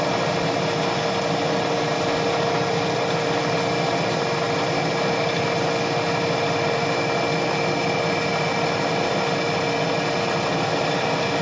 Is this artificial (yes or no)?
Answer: no